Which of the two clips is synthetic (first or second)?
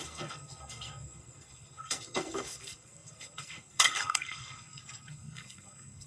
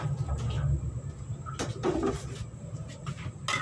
first